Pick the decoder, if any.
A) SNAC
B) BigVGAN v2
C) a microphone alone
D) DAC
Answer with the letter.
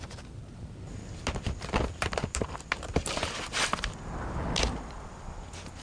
C